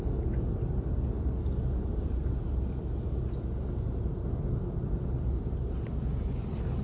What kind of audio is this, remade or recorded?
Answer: recorded